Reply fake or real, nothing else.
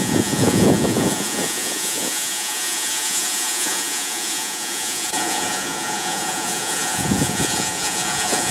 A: fake